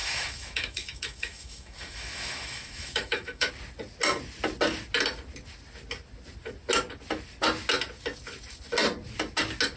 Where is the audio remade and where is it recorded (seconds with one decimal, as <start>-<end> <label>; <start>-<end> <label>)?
0.0-3.5 remade; 3.5-9.8 recorded